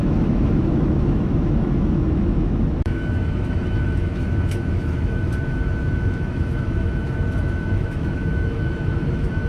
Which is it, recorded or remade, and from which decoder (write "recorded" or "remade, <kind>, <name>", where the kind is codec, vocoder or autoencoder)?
remade, autoencoder, DAC-VAE